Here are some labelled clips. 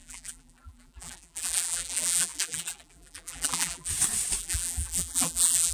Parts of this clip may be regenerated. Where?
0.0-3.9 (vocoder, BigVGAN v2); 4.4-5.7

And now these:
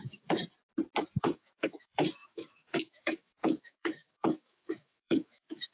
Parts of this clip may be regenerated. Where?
0.0-0.4 (autoencoder, DAC-VAE); 1.2-5.7

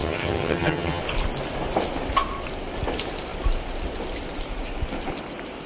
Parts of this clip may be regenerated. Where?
0.0-1.0 (vocoder, HiFi-GAN)

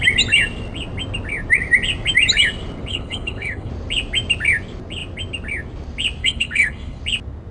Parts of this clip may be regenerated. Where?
2.9-3.7 (codec, HILCodec); 6.2-7.0